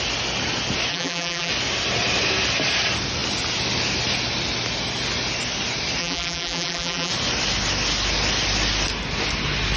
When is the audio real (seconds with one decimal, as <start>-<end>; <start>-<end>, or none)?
0.0-0.9; 1.5-6.0; 7.1-9.8